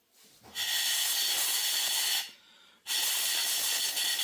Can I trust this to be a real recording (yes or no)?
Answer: yes